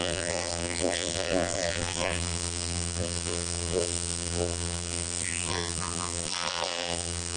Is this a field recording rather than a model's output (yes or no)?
no